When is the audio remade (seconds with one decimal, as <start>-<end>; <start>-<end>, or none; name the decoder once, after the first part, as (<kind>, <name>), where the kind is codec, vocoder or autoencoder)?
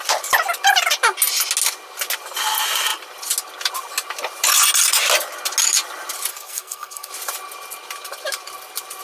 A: 6.3-7.1 (codec, SNAC)